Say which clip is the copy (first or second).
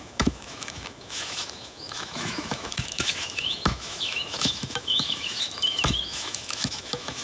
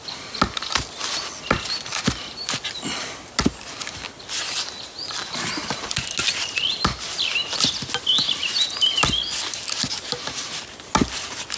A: first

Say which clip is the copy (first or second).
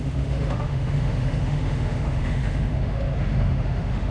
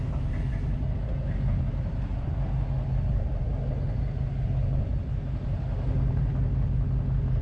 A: first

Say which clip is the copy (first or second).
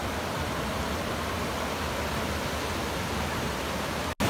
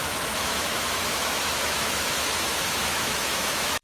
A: second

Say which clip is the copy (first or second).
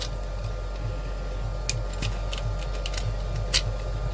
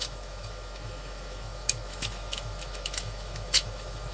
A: second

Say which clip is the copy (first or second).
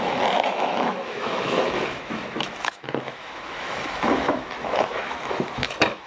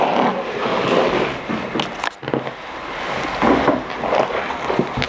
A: first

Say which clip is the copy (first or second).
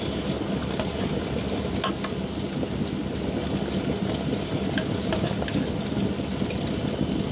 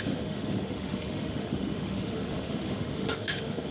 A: second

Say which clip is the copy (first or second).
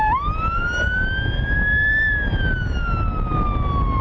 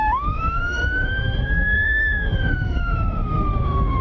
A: second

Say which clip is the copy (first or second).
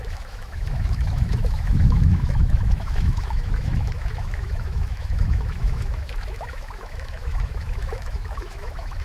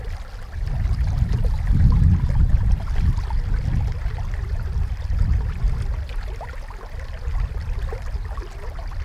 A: first